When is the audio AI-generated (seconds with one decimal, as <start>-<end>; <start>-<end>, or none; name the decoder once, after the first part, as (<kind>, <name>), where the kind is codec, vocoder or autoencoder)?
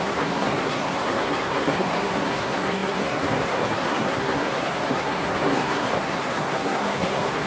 0.0-7.5 (codec, SNAC)